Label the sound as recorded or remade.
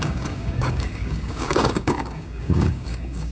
remade